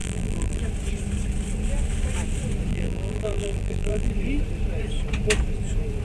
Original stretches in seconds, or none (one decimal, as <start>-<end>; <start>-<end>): 0.6-2.7; 4.1-6.0